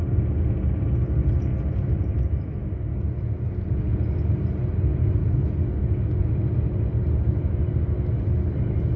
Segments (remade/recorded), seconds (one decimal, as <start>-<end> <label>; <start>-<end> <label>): 0.0-9.0 recorded